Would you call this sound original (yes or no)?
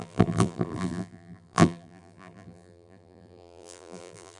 no